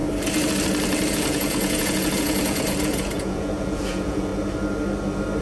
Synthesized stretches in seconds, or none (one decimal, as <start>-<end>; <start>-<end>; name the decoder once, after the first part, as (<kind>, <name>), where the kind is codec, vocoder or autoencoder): 1.1-4.3 (vocoder, Vocos)